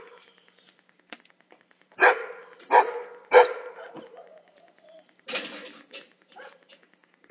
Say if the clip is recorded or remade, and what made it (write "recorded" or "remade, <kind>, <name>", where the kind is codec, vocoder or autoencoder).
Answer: remade, vocoder, BigVGAN v2